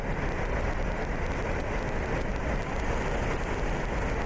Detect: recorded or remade recorded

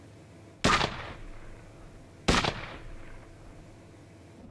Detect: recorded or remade recorded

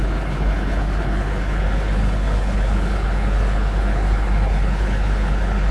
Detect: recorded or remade remade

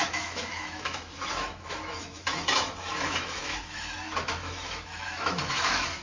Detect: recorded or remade remade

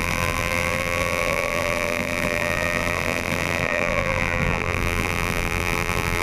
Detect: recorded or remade remade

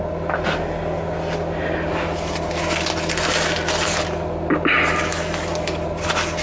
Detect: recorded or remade recorded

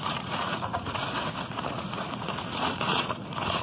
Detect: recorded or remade remade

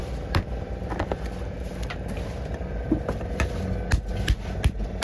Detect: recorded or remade remade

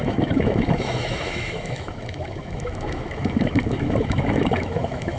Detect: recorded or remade remade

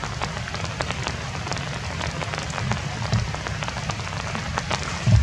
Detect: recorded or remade recorded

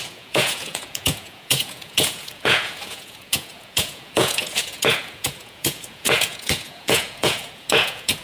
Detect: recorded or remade remade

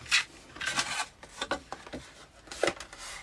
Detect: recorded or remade recorded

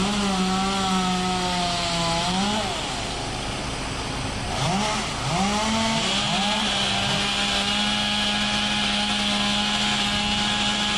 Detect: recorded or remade recorded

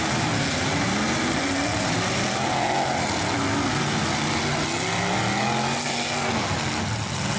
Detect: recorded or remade recorded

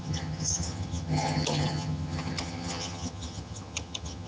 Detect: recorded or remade remade